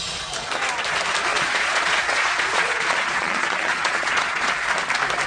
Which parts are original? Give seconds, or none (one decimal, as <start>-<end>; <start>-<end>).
0.0-1.3; 4.5-5.3